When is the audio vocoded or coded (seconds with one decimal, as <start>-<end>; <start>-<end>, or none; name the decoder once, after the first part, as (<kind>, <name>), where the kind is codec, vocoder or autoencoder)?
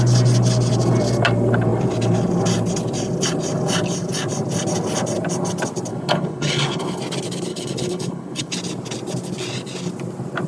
5.9-7.0 (codec, HILCodec); 7.5-8.5